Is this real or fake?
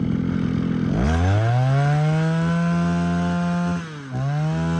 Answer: real